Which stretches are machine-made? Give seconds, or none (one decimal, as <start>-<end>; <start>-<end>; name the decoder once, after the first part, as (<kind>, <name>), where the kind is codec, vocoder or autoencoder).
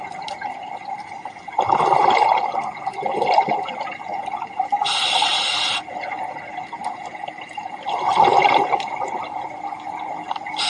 none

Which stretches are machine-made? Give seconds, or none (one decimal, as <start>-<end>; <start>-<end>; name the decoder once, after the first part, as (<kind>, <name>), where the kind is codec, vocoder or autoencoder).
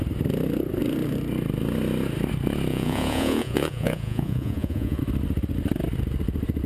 2.7-5.0 (vocoder, Vocos)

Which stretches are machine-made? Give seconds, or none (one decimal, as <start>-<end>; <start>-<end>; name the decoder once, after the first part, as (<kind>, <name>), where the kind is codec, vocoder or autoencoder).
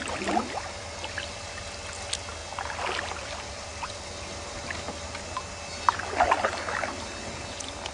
none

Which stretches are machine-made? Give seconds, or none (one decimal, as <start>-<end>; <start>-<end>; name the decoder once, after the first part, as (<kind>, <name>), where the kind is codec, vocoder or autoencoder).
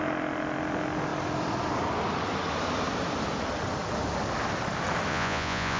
5.1-5.8 (vocoder, Vocos)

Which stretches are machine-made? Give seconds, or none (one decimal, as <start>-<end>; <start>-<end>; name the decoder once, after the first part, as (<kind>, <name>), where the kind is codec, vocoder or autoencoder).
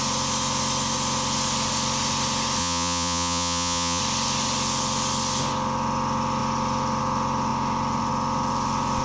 2.6-4.0 (vocoder, Vocos)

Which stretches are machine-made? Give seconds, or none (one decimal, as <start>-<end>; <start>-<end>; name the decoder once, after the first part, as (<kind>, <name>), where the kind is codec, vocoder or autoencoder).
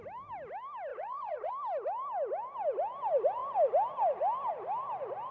0.9-1.5 (vocoder, Vocos)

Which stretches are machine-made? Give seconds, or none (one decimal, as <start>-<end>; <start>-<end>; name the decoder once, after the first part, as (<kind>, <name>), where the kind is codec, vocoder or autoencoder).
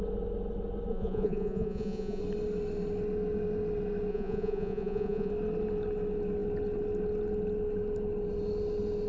0.9-2.2 (vocoder, Vocos); 4.1-5.3